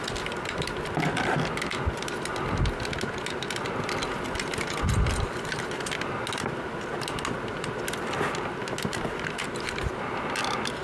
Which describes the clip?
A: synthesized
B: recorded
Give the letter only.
B